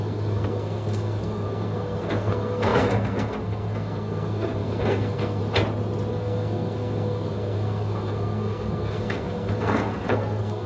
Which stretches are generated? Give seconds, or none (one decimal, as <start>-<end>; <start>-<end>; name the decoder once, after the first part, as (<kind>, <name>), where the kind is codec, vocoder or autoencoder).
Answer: 0.0-5.4 (codec, SNAC); 6.1-10.7